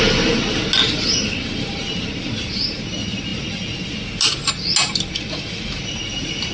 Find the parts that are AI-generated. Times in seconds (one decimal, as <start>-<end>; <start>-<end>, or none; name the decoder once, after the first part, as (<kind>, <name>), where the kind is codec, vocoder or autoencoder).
none